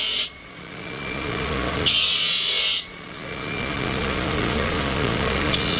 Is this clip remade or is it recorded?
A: remade